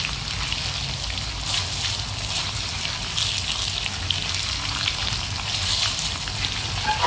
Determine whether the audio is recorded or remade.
recorded